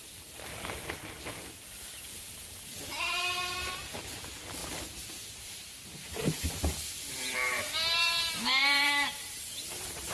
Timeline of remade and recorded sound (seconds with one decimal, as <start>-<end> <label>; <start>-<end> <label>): 0.0-4.6 remade; 4.6-5.3 recorded; 5.3-10.1 remade